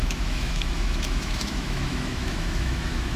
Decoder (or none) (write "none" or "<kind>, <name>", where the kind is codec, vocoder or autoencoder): autoencoder, DAC-VAE